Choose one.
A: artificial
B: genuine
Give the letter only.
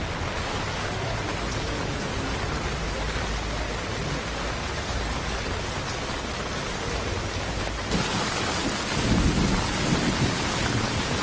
B